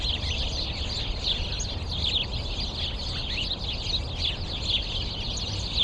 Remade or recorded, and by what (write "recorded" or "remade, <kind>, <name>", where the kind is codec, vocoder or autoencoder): recorded